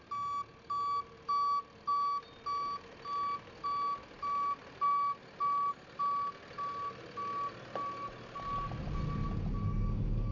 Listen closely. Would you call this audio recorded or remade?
recorded